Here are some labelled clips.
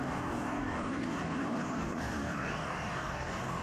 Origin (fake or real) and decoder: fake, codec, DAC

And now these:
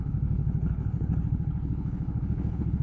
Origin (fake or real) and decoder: fake, codec, HILCodec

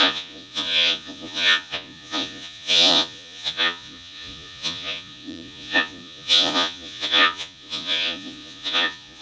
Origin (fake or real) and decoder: fake, vocoder, Vocos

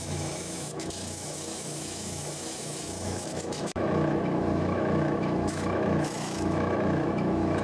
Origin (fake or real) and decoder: fake, autoencoder, DAC-VAE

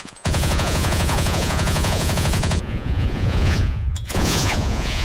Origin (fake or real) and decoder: fake, vocoder, Vocos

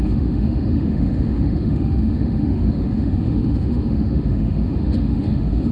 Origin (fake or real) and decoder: fake, autoencoder, DAC-VAE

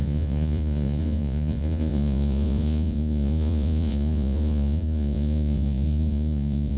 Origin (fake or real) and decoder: fake, vocoder, Vocos